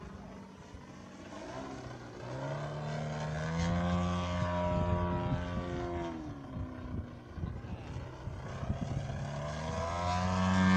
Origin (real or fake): real